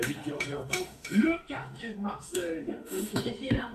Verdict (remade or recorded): remade